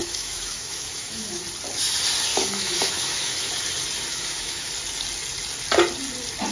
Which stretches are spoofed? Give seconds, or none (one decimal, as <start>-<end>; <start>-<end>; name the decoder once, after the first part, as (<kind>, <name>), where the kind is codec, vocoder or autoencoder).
0.0-1.4 (autoencoder, DAC-VAE); 2.3-3.5; 4.1-4.7